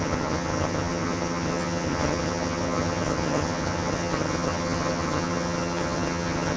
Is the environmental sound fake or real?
fake